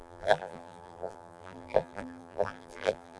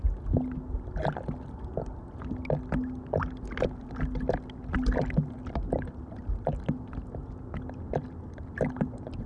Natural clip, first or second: second